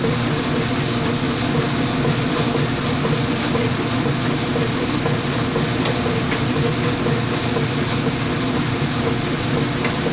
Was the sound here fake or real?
real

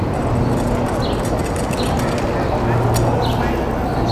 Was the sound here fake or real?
real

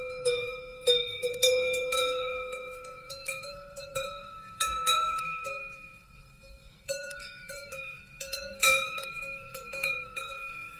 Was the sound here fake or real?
fake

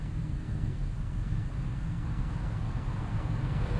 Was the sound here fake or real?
fake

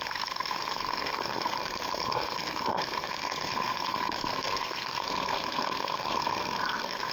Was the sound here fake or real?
fake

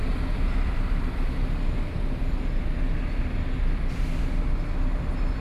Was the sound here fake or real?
real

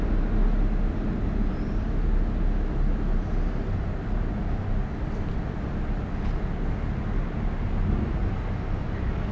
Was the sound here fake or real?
real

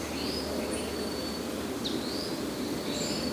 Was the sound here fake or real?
real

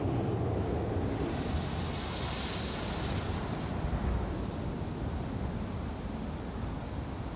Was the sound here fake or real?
real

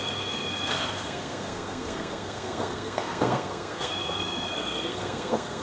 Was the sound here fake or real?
fake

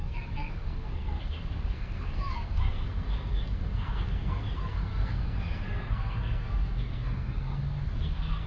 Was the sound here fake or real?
fake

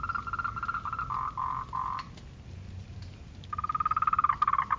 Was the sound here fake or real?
real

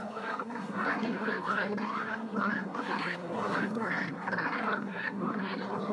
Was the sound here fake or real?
fake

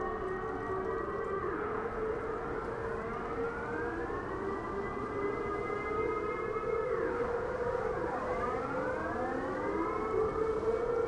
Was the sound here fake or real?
real